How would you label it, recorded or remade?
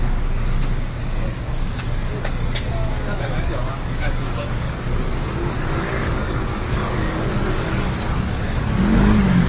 remade